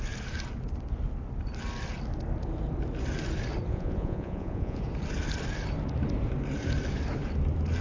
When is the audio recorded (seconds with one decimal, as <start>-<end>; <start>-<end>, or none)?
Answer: 0.0-3.7; 4.8-7.8